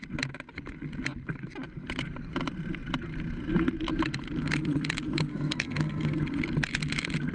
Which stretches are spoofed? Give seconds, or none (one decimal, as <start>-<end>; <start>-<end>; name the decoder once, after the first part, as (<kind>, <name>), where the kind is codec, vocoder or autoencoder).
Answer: 5.3-6.2 (codec, SNAC)